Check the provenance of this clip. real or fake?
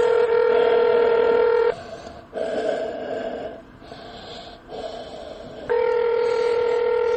fake